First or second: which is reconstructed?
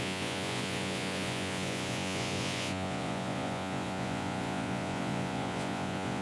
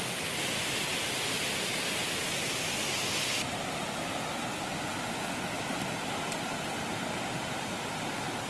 first